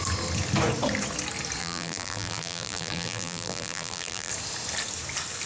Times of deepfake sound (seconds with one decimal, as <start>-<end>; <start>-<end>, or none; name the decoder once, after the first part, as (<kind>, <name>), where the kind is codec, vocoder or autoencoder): 1.6-4.3 (vocoder, BigVGAN v2)